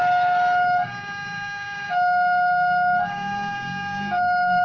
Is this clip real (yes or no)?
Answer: no